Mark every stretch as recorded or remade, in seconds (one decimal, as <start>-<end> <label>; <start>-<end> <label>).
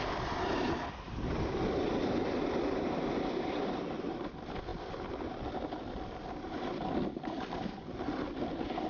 0.0-4.7 remade; 4.7-8.4 recorded; 8.4-8.9 remade